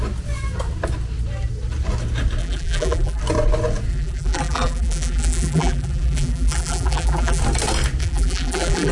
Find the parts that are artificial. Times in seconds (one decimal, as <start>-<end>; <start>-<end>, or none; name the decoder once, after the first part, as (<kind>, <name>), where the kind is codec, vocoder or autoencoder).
2.4-3.2 (vocoder, BigVGAN v2); 3.9-7.4; 8.0-8.9